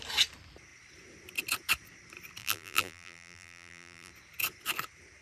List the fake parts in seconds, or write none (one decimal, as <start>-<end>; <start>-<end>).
2.4-4.1